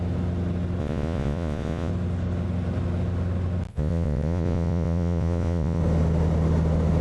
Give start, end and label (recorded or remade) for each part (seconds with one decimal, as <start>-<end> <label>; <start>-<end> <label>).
0.0-0.8 recorded; 0.8-1.9 remade; 1.9-3.7 recorded; 3.7-5.8 remade; 5.8-7.0 recorded